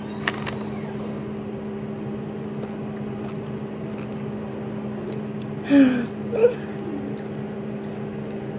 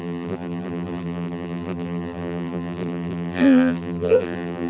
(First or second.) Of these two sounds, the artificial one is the second